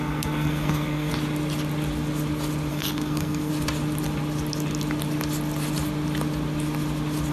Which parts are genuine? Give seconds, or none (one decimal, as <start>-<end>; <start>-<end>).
1.1-2.7; 3.5-7.3